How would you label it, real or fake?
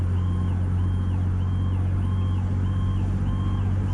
real